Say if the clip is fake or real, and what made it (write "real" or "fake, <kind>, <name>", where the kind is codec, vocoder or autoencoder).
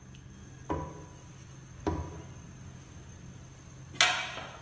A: real